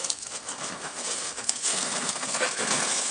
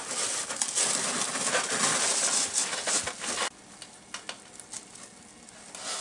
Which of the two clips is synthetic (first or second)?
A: first